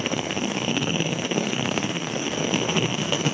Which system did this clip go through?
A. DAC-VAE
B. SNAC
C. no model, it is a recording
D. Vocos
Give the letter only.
B